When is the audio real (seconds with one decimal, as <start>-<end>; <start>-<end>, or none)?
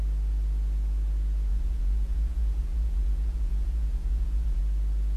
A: 0.0-1.5; 4.6-5.2